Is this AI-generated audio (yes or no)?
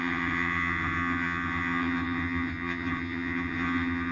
yes